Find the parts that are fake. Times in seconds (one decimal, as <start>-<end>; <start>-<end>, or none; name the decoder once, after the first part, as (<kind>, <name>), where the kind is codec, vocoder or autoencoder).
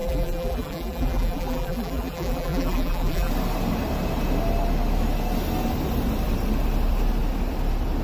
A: 0.0-3.3 (vocoder, BigVGAN v2)